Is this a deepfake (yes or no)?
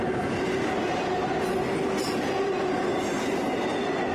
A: no